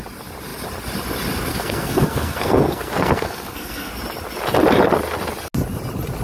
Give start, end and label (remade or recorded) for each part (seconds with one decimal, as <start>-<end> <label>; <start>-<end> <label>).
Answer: 0.0-1.5 recorded; 1.5-3.9 remade; 3.9-6.2 recorded